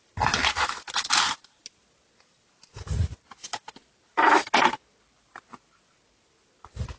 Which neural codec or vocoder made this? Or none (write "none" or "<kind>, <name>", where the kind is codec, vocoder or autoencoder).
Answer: none